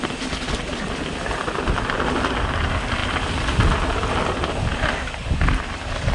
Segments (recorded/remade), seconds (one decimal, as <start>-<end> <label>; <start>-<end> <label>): 0.0-6.1 recorded

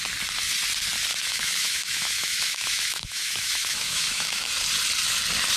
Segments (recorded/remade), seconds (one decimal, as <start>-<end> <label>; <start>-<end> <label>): 0.0-1.1 recorded; 1.1-4.5 remade; 4.5-5.6 recorded

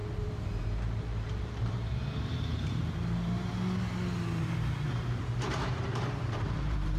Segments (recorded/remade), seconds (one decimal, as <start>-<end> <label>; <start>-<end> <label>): 0.0-3.5 remade; 3.5-4.4 recorded; 4.4-7.0 remade

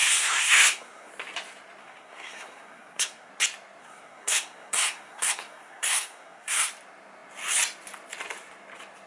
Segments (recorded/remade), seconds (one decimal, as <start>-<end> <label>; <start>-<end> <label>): 0.0-1.1 remade; 1.1-1.8 recorded; 1.8-3.3 remade; 3.3-3.8 recorded; 3.8-6.7 remade; 6.7-9.1 recorded